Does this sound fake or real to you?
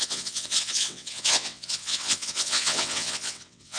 fake